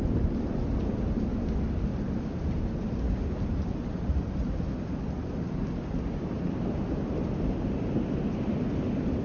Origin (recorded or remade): recorded